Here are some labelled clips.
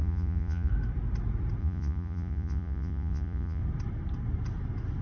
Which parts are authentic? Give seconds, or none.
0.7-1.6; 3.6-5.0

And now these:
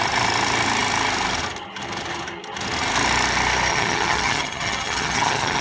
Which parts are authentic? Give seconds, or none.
0.0-3.7

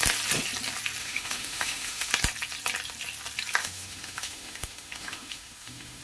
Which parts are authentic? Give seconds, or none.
0.0-1.0; 2.1-3.6

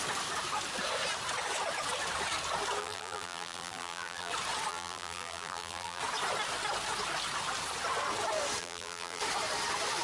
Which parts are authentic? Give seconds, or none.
0.0-2.8; 4.3-4.7; 6.0-8.6; 9.2-10.0

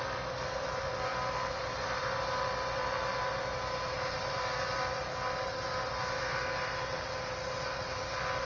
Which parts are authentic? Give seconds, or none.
0.0-8.4

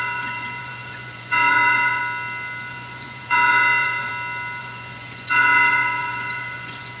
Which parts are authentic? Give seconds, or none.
2.0-2.7; 4.1-4.6

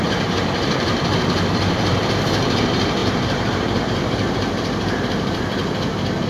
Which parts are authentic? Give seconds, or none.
5.5-6.3